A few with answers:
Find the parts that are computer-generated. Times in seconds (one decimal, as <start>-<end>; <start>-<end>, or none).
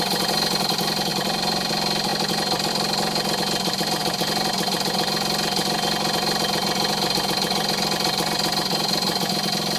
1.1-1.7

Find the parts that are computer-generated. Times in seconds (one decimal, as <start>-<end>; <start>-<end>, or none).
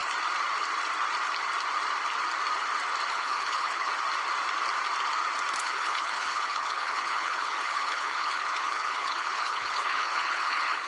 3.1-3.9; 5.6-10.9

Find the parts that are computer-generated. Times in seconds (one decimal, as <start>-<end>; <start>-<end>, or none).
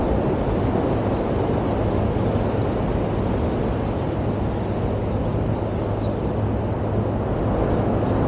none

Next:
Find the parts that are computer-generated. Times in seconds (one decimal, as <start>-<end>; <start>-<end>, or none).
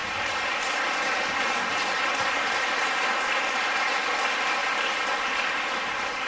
0.0-3.8; 4.6-5.2